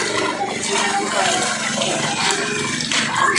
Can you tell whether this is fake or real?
real